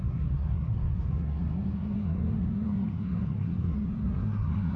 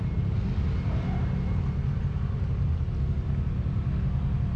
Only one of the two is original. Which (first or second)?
second